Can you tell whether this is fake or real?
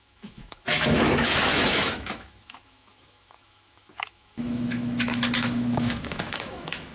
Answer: fake